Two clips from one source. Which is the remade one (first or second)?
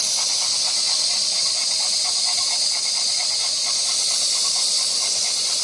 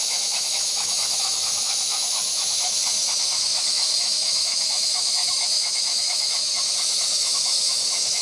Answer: second